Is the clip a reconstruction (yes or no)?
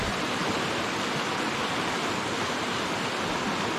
no